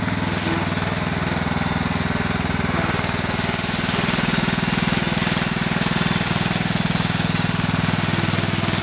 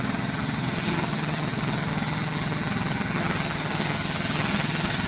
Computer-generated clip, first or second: second